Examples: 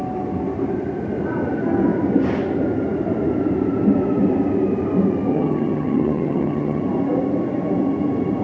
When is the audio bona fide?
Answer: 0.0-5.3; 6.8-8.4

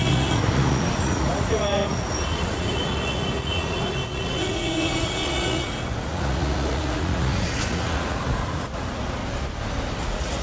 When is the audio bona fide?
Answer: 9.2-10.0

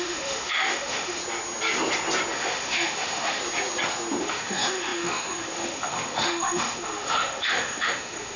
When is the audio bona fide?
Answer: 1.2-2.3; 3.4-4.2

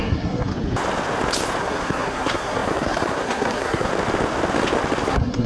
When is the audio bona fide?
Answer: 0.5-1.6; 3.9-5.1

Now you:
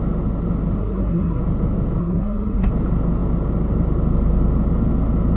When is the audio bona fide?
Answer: 0.0-0.8; 1.4-2.0; 2.7-5.4

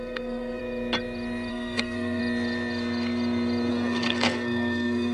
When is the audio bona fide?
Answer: 0.6-1.5; 2.2-3.7